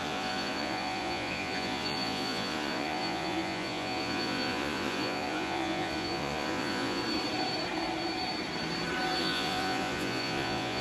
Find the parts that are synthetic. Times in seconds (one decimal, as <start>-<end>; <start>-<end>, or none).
0.0-7.0; 9.2-10.8

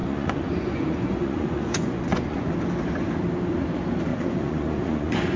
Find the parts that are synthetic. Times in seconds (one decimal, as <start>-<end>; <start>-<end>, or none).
0.0-2.5; 4.1-5.4